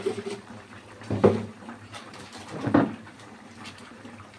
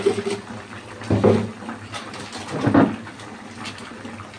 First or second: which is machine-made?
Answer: first